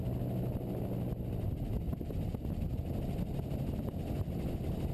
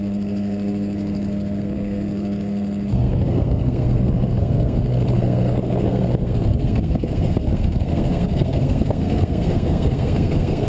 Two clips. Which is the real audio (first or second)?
first